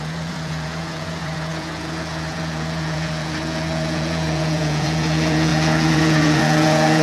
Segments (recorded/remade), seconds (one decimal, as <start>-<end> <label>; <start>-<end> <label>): 0.0-7.0 remade